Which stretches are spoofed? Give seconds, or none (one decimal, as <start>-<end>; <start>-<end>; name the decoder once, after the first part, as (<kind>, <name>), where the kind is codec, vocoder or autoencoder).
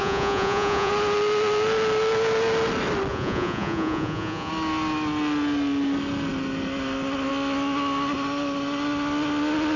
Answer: 0.0-0.9 (vocoder, Vocos); 3.1-4.5